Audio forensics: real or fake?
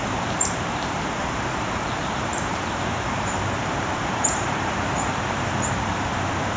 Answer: fake